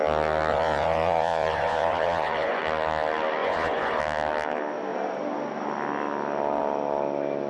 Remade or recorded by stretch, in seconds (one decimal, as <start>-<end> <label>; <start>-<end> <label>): 0.0-0.5 recorded; 0.5-2.6 remade; 2.6-3.4 recorded; 3.4-4.0 remade; 4.0-7.5 recorded